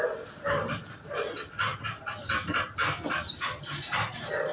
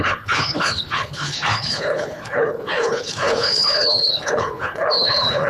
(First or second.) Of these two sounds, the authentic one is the first